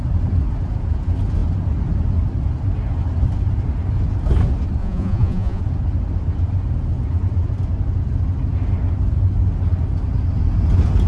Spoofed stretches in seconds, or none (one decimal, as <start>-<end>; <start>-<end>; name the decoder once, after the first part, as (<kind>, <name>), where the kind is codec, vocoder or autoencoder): 4.8-5.6 (vocoder, Vocos)